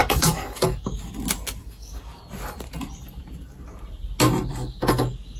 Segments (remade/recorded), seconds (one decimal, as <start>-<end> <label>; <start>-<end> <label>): 0.0-1.1 remade; 1.1-1.6 recorded; 1.6-2.2 remade; 2.2-4.5 recorded; 4.5-5.4 remade

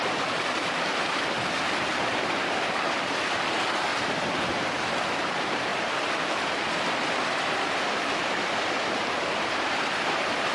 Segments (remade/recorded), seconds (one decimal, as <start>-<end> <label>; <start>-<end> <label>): 0.0-10.5 remade

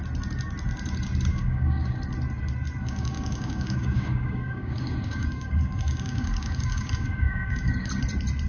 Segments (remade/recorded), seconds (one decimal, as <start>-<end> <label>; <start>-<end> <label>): 0.0-1.3 recorded; 1.3-2.0 remade; 2.0-2.8 recorded; 2.8-7.9 remade; 7.9-8.5 recorded

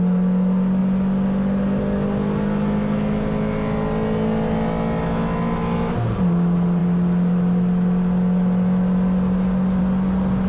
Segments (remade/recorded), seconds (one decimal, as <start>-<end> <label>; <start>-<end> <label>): 0.0-10.5 recorded